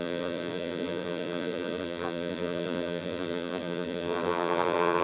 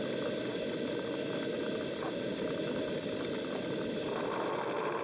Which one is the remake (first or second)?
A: first